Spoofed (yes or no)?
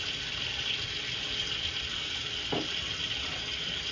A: no